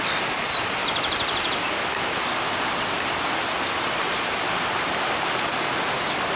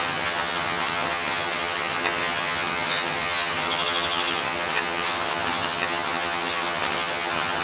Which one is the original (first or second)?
first